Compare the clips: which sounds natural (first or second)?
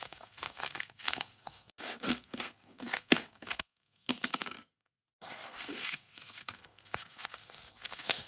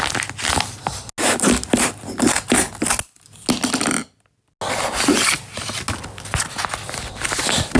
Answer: second